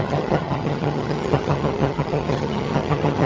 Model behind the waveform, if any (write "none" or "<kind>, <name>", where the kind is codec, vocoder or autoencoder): vocoder, HiFi-GAN